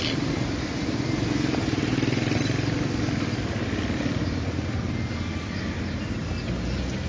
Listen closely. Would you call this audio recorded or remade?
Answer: recorded